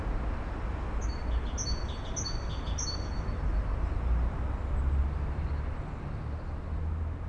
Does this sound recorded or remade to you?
recorded